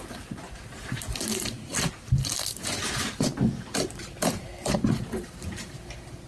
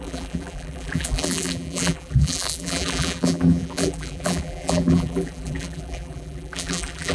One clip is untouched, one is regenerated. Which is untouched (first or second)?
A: first